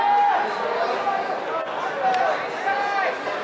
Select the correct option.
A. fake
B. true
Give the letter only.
B